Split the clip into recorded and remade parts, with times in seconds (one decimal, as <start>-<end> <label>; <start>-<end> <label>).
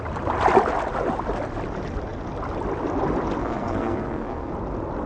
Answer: 0.0-3.4 recorded; 3.4-4.5 remade; 4.5-5.1 recorded